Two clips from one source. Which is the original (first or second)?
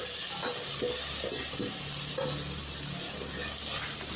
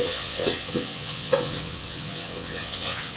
first